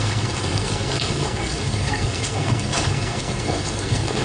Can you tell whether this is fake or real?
fake